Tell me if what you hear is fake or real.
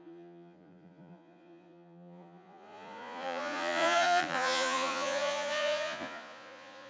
fake